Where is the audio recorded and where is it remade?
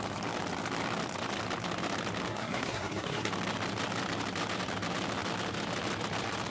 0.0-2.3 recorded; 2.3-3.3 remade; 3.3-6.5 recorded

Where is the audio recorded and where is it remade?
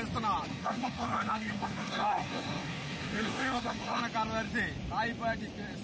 0.0-0.5 recorded; 0.5-4.0 remade; 4.0-5.8 recorded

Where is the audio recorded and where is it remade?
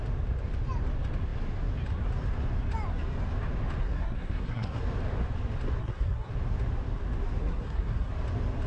0.0-3.8 recorded; 3.8-4.8 remade; 4.8-5.8 recorded; 5.8-6.3 remade; 6.3-7.4 recorded; 7.4-8.1 remade; 8.1-8.7 recorded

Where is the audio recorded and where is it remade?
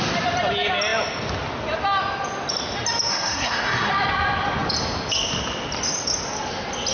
0.0-3.1 recorded; 3.1-3.9 remade; 3.9-6.9 recorded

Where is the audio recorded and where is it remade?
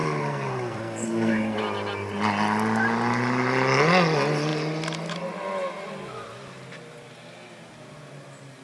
0.0-1.6 remade; 1.6-8.6 recorded